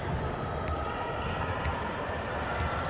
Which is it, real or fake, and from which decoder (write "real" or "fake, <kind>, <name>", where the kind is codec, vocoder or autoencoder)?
real